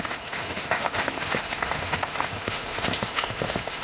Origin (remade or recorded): remade